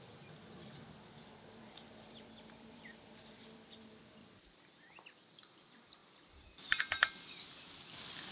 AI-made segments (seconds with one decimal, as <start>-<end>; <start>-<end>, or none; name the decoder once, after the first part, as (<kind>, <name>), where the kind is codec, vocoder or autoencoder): 0.0-8.3 (vocoder, BigVGAN v2)